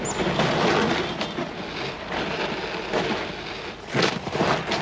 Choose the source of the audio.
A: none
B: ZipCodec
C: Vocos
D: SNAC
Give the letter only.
A